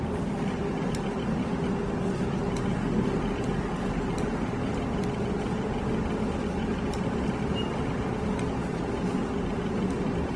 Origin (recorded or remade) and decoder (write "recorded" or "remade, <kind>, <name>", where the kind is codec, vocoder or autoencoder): recorded